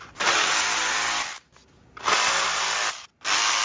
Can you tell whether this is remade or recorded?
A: recorded